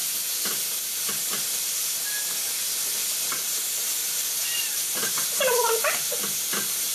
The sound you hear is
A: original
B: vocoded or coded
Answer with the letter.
A